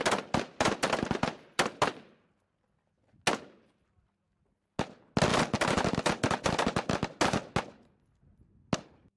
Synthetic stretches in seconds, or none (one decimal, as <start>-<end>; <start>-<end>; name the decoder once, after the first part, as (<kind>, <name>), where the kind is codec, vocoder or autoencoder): none